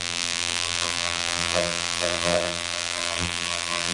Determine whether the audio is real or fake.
fake